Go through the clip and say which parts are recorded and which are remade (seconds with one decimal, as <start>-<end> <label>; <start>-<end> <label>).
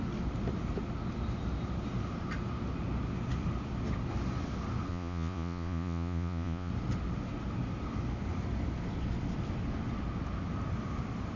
0.0-4.9 recorded; 4.9-6.7 remade; 6.7-11.4 recorded